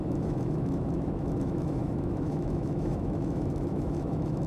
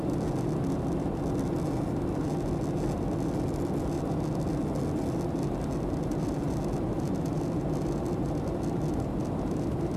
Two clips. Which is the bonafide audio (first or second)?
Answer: second